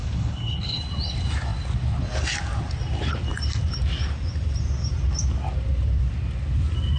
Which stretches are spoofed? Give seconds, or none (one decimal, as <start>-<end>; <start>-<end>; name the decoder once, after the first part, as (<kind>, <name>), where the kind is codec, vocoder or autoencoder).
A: 0.0-0.8 (codec, HILCodec)